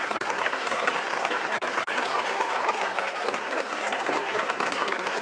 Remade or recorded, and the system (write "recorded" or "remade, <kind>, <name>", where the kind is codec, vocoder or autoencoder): remade, codec, SNAC